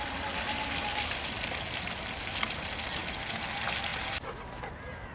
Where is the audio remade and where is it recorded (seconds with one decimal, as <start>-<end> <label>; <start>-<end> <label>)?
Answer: 0.0-5.1 recorded